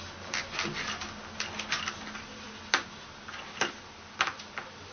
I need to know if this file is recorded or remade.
recorded